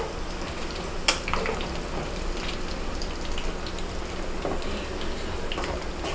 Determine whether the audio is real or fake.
real